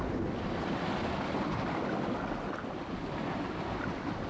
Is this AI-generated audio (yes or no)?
no